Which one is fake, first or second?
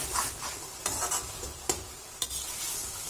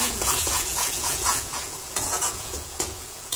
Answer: second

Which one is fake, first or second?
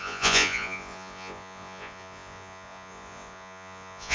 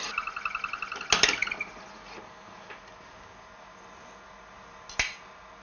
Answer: first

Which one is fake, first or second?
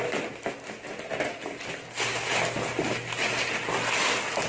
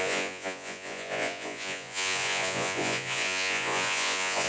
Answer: second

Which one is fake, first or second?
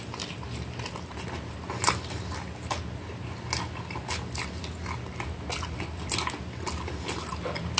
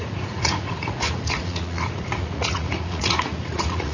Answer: second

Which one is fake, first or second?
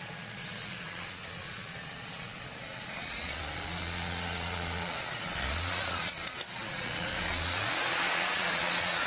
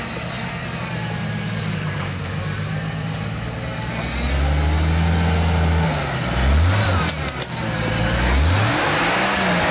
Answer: first